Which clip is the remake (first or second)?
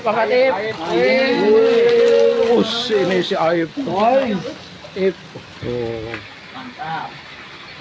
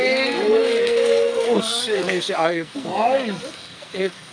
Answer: second